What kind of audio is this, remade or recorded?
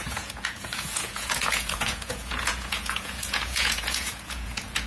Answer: remade